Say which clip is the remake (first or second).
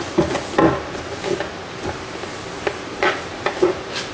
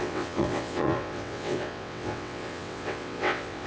second